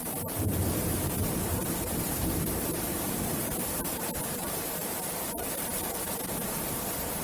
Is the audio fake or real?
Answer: fake